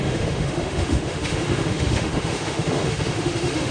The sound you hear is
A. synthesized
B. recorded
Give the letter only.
A